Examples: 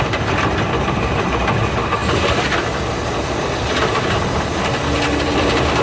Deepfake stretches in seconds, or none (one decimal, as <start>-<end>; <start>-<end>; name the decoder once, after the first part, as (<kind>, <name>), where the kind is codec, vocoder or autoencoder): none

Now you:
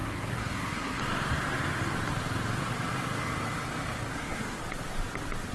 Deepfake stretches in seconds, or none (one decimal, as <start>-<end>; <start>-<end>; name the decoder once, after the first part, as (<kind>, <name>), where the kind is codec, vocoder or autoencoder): 0.0-1.0 (codec, SNAC); 4.1-4.6

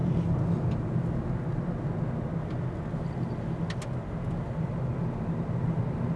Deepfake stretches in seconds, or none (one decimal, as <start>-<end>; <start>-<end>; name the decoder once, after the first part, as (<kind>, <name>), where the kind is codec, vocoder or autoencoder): none

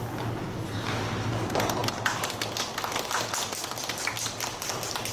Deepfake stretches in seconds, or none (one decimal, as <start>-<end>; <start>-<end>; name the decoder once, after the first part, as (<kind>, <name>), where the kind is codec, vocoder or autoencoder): none

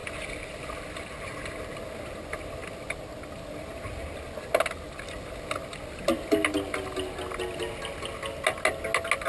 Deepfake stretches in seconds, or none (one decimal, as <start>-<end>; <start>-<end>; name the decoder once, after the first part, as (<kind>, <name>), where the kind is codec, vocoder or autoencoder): none

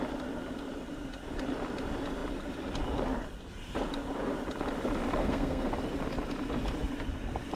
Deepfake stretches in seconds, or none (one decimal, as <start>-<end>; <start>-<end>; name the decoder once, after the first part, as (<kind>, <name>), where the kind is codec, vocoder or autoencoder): 5.2-5.7 (codec, SNAC)

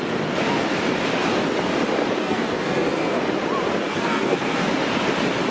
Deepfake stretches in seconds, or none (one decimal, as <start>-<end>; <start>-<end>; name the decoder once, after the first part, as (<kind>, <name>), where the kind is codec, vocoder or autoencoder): 2.2-3.2 (codec, SNAC); 3.8-4.7

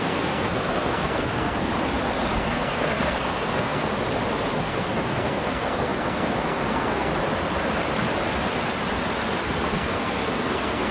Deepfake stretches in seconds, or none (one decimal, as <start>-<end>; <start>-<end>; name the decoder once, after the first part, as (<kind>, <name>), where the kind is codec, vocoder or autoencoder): 0.0-1.7 (codec, SNAC); 2.4-3.9; 4.6-7.1; 9.7-10.9